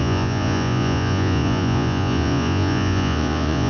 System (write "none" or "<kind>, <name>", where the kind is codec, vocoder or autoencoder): vocoder, Vocos